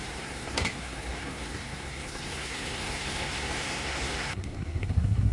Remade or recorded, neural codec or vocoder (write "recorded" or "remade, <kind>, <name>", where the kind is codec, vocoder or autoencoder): remade, codec, SNAC